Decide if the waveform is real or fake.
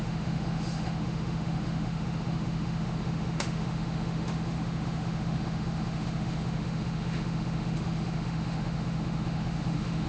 fake